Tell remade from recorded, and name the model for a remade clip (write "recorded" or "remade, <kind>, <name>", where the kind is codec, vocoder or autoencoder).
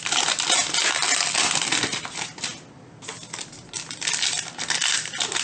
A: recorded